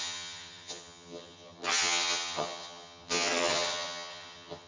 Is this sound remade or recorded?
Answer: remade